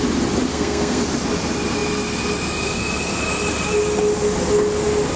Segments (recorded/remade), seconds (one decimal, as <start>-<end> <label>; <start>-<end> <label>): 0.0-0.5 recorded; 0.5-1.0 remade; 1.0-5.2 recorded